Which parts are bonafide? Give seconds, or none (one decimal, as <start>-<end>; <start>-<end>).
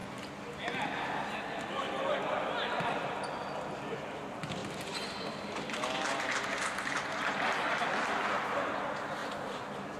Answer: 0.0-10.0